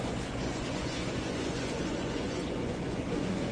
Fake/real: fake